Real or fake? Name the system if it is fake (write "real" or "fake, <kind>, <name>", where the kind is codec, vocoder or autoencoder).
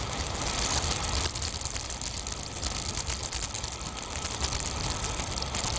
real